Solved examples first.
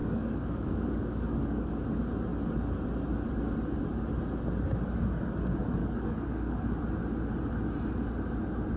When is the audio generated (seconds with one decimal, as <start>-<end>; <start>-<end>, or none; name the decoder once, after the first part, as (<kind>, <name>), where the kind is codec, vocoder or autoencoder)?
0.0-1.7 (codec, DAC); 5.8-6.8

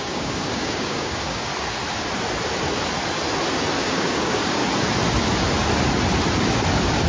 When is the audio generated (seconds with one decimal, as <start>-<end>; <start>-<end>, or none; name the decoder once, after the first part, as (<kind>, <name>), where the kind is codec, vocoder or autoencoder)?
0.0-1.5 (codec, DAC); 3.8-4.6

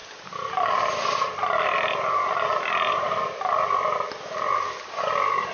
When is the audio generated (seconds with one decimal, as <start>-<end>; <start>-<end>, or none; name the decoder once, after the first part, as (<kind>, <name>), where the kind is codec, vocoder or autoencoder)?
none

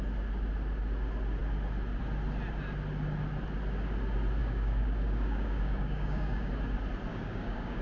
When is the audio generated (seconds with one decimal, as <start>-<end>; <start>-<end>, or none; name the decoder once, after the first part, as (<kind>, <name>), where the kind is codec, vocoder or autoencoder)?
4.4-6.5 (codec, DAC); 7.1-7.8

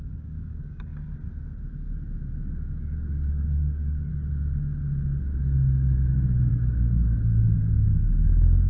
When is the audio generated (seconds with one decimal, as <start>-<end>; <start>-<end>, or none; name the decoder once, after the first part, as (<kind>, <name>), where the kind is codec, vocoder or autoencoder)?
0.0-0.9 (codec, DAC); 2.8-4.1; 6.5-8.7